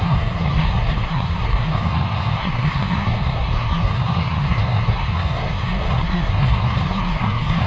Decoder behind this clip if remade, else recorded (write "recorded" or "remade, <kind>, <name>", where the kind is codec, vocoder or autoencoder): remade, codec, SNAC